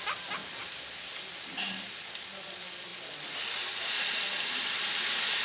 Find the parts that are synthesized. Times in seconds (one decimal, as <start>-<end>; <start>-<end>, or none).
none